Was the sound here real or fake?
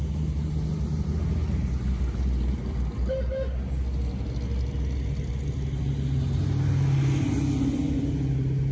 real